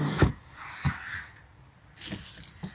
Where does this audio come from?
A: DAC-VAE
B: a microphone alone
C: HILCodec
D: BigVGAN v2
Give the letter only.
B